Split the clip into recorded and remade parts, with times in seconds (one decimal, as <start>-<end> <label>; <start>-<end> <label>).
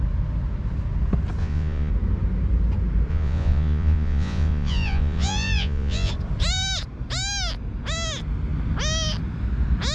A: 0.0-1.4 recorded; 1.4-1.9 remade; 1.9-3.1 recorded; 3.1-6.1 remade; 6.1-9.9 recorded